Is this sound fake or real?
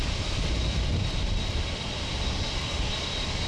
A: real